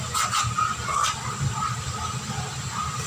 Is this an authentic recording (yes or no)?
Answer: yes